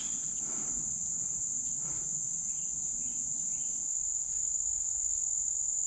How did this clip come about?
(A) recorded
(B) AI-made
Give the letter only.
A